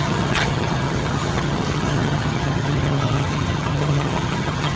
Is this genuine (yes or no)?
no